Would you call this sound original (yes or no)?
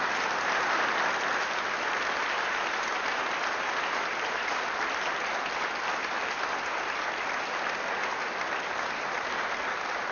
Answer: yes